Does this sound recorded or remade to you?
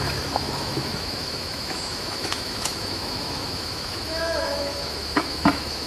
remade